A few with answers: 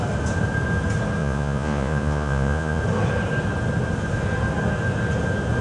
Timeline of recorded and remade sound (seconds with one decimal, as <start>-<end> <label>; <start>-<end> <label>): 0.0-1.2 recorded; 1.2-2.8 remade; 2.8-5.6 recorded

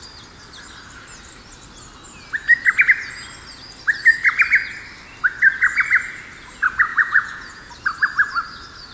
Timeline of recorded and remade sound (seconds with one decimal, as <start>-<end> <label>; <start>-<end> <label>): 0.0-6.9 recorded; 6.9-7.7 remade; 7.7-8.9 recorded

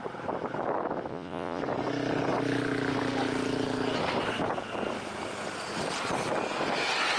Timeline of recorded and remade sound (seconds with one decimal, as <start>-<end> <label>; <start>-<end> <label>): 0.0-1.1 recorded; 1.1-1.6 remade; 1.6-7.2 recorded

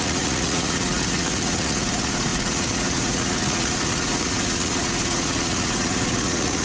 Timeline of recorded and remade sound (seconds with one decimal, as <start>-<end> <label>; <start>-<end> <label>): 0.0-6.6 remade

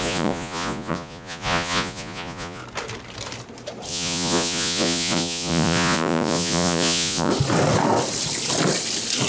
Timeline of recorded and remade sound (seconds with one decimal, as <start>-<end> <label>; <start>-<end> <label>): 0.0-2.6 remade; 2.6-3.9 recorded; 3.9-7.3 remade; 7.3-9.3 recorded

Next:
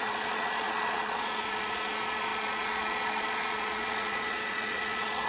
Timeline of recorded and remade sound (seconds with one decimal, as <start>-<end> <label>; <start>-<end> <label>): 0.0-5.3 remade

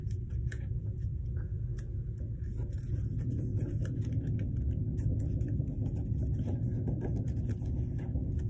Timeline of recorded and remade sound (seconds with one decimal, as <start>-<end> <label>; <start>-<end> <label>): 0.0-3.8 remade; 3.8-8.5 recorded